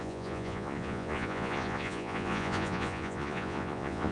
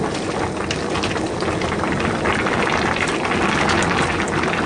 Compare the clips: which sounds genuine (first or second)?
second